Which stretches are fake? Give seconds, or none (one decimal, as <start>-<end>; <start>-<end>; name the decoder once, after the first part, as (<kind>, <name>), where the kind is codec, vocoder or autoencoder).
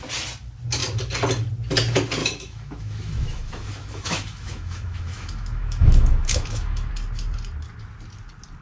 2.2-6.9 (autoencoder, DAC-VAE)